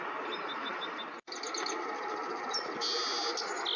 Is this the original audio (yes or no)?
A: yes